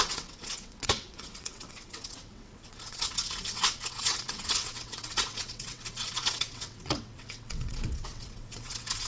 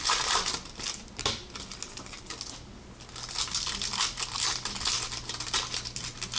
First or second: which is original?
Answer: second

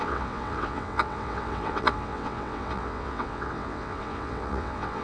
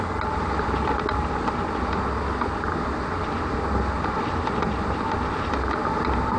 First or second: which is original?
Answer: second